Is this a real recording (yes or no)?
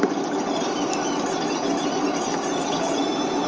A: yes